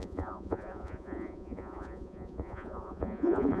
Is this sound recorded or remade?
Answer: remade